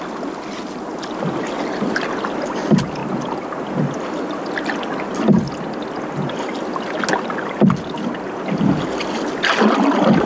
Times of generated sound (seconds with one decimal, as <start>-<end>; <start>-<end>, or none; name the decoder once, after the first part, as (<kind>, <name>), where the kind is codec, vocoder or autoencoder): none